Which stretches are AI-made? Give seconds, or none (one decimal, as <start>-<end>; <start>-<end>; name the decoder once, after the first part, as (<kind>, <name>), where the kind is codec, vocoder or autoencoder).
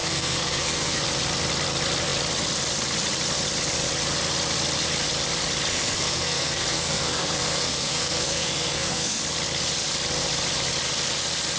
0.0-1.0 (codec, SNAC); 5.7-9.2